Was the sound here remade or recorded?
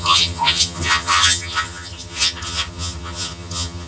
remade